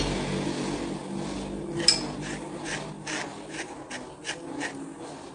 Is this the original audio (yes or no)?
yes